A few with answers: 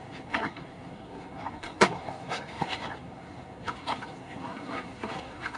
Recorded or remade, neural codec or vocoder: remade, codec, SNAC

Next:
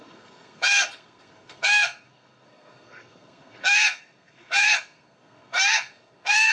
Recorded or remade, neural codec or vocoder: remade, codec, SNAC